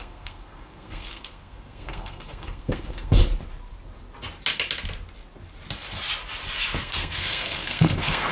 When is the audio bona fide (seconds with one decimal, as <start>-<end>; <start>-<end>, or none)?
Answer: 3.2-6.8